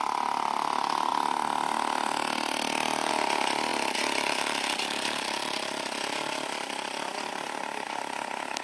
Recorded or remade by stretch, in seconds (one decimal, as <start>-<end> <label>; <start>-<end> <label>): 0.0-8.6 recorded